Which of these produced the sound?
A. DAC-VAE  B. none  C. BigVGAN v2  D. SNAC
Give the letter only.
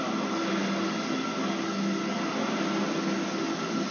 B